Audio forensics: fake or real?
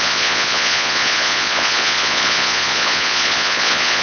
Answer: fake